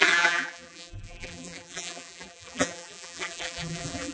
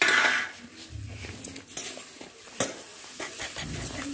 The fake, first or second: first